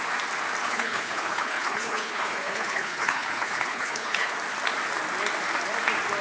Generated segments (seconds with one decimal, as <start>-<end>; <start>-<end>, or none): 0.6-4.3